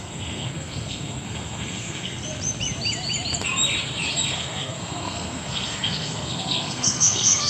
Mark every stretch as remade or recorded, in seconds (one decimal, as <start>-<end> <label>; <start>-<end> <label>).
0.0-2.2 remade; 2.2-4.3 recorded; 4.3-7.5 remade